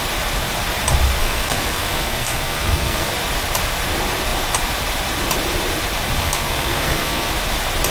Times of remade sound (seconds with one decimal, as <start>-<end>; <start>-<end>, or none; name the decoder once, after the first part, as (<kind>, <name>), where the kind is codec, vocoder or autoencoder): 1.2-3.1 (codec, SNAC); 6.2-7.3